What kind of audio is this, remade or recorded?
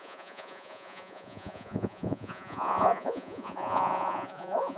remade